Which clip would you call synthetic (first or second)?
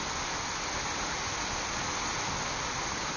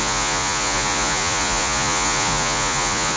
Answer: second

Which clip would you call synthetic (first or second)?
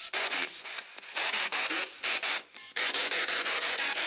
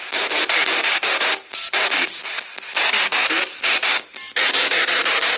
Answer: first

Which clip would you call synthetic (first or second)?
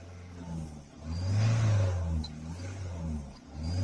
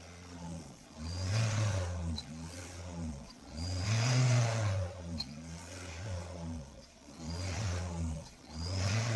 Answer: second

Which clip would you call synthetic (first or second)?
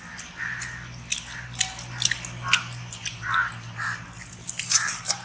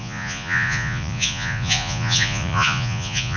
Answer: second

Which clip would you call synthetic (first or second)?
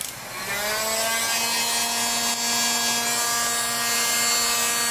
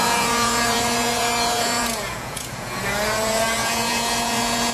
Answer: second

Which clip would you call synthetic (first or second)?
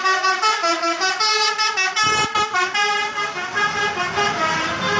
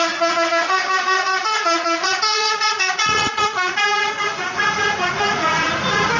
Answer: second